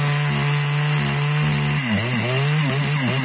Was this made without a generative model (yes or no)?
yes